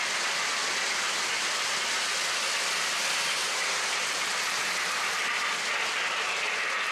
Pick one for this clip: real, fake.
real